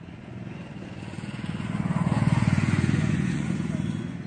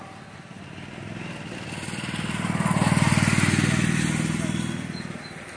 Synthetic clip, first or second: first